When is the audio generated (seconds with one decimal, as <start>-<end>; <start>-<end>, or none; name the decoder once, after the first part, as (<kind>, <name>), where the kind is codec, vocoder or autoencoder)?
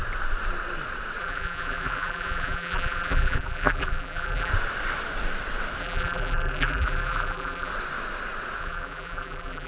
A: 1.2-4.5 (vocoder, BigVGAN v2); 5.8-7.7; 8.6-9.7